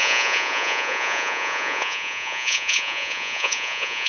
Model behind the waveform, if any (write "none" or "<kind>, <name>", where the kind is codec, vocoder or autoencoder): vocoder, Vocos